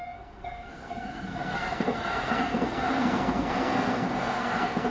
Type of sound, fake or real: fake